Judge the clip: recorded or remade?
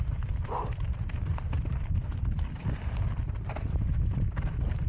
remade